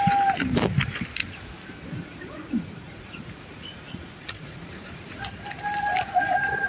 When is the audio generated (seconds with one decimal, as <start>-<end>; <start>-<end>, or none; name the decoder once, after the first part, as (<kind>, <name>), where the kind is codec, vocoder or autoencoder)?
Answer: 1.2-5.2 (vocoder, Vocos)